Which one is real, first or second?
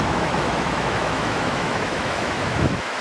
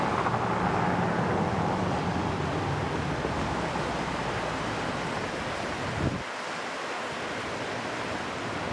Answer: second